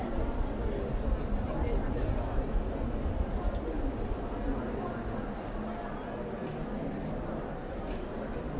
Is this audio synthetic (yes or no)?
no